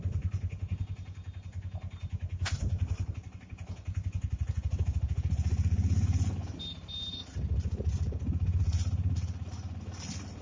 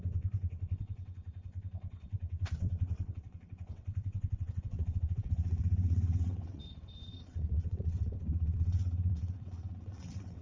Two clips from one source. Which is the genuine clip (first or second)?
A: first